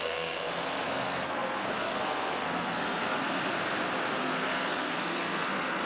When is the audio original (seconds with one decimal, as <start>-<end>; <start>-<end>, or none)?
3.5-4.2